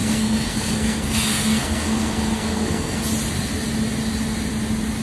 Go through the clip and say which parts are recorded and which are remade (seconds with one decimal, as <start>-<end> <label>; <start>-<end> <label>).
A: 0.0-3.0 remade; 3.0-5.0 recorded